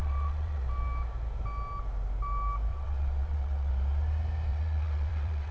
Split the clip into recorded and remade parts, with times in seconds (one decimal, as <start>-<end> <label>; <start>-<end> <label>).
0.0-0.6 remade; 0.6-2.7 recorded; 2.7-3.7 remade; 3.7-4.5 recorded; 4.5-5.5 remade